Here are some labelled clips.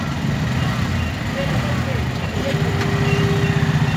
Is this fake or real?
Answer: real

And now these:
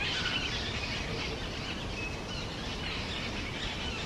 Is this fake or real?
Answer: real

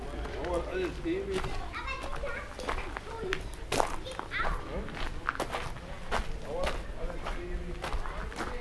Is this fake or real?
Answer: real